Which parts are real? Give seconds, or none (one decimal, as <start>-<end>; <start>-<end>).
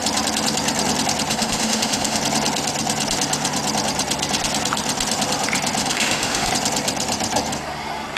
0.0-1.3; 2.2-5.8; 6.5-8.2